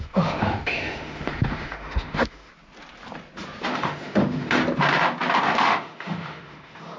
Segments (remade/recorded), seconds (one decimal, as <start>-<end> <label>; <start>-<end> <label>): 0.0-2.5 remade; 2.5-3.7 recorded; 3.7-4.6 remade; 4.6-5.4 recorded; 5.4-7.0 remade